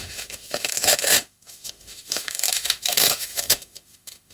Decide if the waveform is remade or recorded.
remade